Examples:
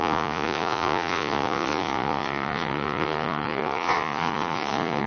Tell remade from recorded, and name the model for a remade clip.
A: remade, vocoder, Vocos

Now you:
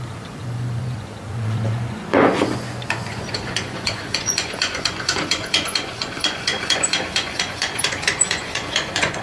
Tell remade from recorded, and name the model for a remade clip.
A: remade, vocoder, Vocos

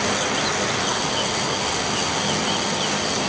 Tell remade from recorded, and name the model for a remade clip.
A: recorded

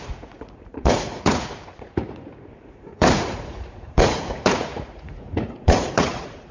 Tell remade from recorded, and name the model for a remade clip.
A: remade, vocoder, Vocos